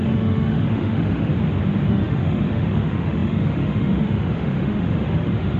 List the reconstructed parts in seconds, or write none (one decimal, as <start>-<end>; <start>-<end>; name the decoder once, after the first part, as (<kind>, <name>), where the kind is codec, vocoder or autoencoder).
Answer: 0.0-1.3 (autoencoder, DAC-VAE); 1.9-5.6